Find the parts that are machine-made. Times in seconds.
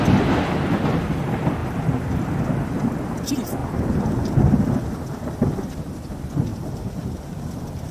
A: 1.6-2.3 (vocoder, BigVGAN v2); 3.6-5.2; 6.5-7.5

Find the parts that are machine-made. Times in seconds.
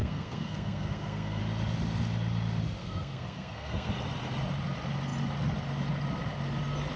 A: 0.0-1.4 (codec, SNAC); 2.8-3.9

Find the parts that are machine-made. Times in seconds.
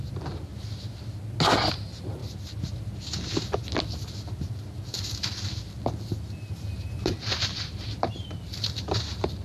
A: 0.0-0.5 (vocoder, BigVGAN v2); 1.7-2.2; 6.5-9.4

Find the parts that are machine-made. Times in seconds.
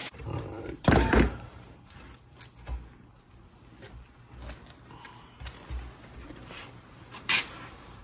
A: 0.0-2.4 (vocoder, BigVGAN v2); 6.4-8.0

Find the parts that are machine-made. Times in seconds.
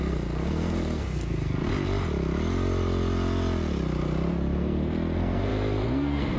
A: 0.0-1.7 (codec, SNAC); 4.3-6.4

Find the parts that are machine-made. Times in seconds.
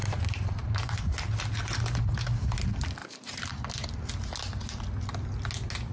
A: 0.0-1.0 (vocoder, BigVGAN v2); 3.0-3.5